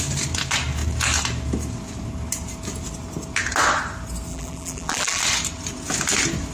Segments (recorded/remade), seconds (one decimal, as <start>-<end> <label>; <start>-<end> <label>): 0.0-4.3 recorded; 4.3-5.2 remade; 5.2-6.5 recorded